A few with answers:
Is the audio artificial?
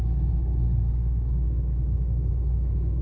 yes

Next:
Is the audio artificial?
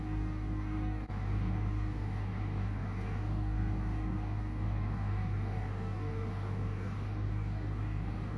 yes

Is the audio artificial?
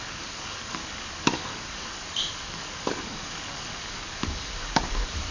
yes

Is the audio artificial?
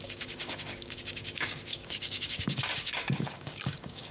yes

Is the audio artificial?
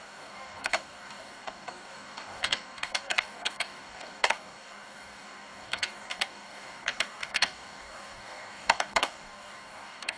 yes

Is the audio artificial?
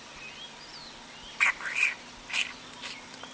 no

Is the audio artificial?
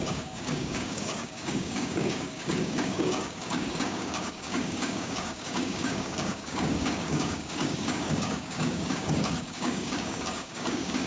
yes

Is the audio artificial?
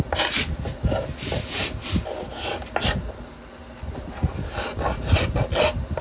no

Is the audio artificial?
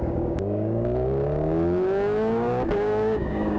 yes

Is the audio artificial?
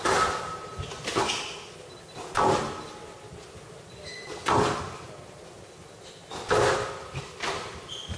no